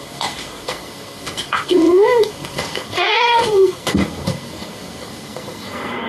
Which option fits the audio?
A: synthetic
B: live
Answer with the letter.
A